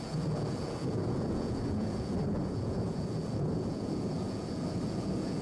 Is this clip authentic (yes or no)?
no